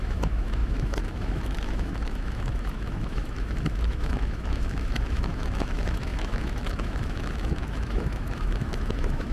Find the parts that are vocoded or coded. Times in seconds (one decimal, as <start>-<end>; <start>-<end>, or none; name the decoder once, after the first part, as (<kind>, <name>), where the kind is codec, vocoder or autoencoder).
0.0-9.3 (autoencoder, DAC-VAE)